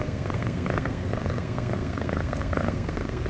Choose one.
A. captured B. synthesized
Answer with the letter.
B